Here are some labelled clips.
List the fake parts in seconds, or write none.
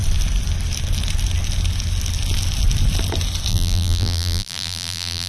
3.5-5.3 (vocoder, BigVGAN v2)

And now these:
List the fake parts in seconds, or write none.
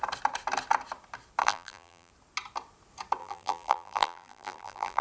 1.4-2.1 (vocoder, BigVGAN v2); 3.2-5.0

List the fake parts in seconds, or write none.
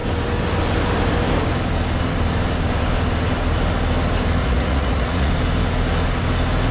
4.4-5.3 (vocoder, Vocos)